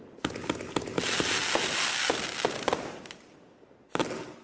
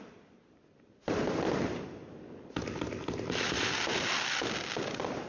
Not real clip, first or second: second